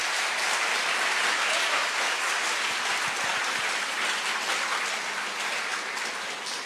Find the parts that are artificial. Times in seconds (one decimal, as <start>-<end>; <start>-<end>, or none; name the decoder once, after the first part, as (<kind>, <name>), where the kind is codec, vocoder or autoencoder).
3.3-4.2 (vocoder, BigVGAN v2)